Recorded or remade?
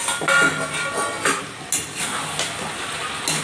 recorded